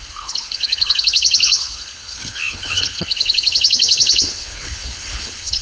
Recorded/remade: remade